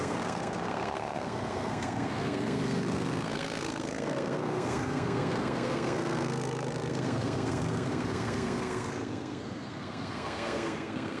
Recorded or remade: remade